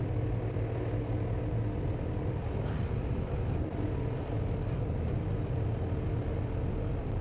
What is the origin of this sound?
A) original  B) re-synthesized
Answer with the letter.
A